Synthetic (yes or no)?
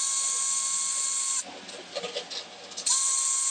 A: no